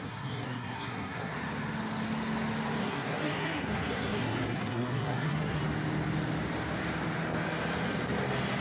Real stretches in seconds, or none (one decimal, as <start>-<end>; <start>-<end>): 1.3-2.8; 5.6-8.6